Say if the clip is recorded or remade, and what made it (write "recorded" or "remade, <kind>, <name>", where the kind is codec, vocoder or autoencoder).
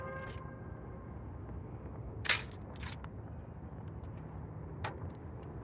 recorded